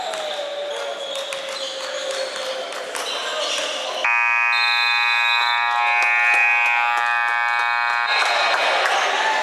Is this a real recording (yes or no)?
yes